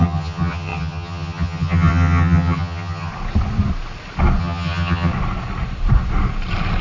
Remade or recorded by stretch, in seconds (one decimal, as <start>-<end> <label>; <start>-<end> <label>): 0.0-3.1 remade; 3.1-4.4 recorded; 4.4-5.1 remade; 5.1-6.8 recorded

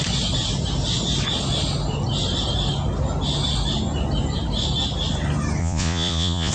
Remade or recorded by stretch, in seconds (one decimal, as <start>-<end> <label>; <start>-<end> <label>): 0.0-5.6 recorded; 5.6-6.5 remade

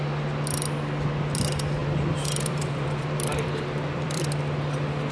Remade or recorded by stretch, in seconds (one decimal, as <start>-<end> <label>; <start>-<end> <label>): 0.0-1.8 recorded; 1.8-4.2 remade; 4.2-5.1 recorded

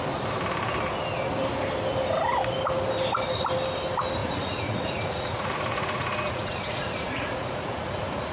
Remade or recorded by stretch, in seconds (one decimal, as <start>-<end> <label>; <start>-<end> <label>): 0.0-4.2 recorded; 4.2-8.3 remade

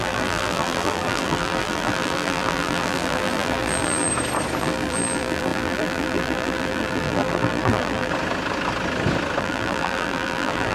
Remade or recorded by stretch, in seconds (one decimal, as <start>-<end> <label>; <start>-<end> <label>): 0.0-4.1 remade; 4.1-4.6 recorded; 4.6-8.1 remade; 8.1-9.4 recorded; 9.4-10.7 remade